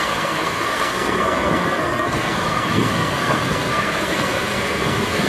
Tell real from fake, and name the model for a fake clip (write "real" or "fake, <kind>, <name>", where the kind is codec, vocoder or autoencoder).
fake, codec, SNAC